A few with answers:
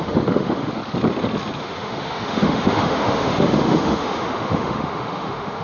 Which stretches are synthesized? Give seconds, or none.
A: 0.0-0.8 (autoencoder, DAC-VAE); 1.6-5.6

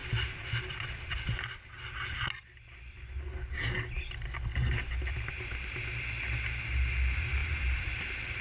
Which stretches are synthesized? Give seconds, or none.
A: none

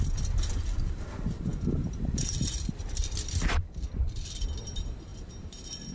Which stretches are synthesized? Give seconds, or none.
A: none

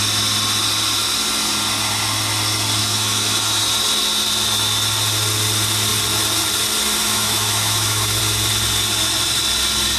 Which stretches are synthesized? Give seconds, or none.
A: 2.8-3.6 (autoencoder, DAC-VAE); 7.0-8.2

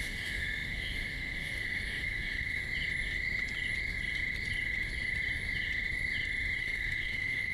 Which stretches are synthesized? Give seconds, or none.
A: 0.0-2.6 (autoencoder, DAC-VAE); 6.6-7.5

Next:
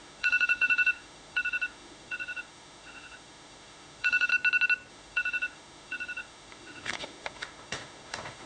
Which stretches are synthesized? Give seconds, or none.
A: 0.0-4.3 (autoencoder, DAC-VAE); 4.9-8.5